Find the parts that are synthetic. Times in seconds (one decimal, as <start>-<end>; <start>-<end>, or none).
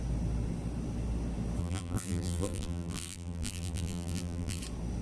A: 1.6-4.6